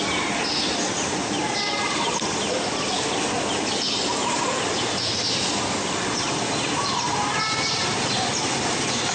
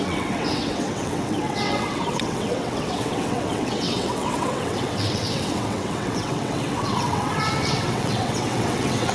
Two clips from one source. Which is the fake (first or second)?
second